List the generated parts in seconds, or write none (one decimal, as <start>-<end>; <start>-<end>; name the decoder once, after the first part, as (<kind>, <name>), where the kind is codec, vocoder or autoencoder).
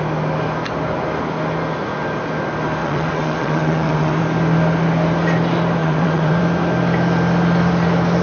2.8-4.2 (vocoder, WaveNeXt); 5.8-6.4